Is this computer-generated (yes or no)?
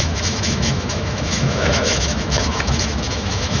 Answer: yes